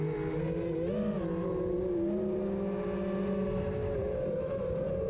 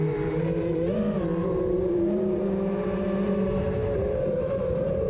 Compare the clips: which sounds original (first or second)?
first